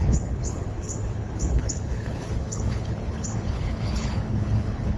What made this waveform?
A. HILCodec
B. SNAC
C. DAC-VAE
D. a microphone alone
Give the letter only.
A